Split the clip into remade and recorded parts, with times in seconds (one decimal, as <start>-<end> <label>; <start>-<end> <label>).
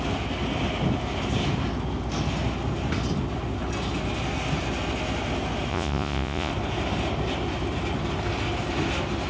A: 0.0-5.7 recorded; 5.7-6.5 remade; 6.5-9.3 recorded